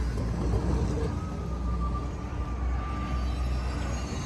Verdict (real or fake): real